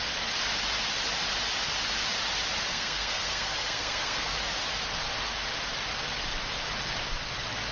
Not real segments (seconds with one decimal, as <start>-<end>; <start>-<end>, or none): 2.7-4.3